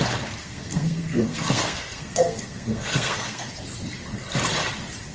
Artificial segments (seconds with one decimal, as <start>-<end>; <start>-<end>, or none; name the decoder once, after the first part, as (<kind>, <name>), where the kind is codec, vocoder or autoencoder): 0.4-3.5 (codec, SNAC)